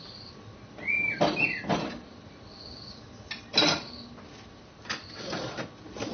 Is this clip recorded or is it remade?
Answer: recorded